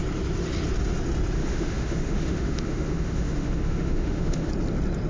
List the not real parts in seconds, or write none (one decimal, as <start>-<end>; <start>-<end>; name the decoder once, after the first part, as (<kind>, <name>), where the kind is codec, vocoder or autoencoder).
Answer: 1.4-4.5 (autoencoder, DAC-VAE)